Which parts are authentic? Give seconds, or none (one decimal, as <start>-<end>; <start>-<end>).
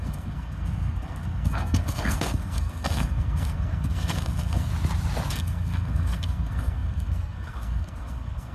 4.7-5.3